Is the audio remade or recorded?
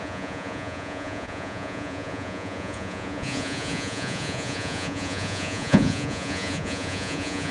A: remade